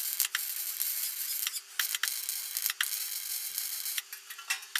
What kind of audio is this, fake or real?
real